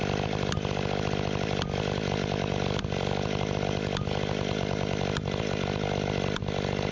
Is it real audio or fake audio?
real